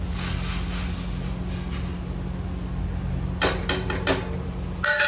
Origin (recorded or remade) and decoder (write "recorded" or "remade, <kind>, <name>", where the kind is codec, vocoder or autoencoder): recorded